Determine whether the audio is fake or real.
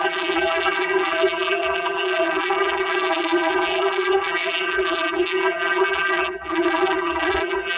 fake